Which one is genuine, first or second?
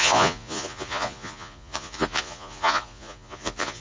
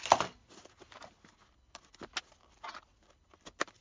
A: second